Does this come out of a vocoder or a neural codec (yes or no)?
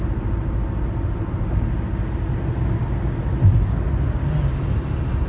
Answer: no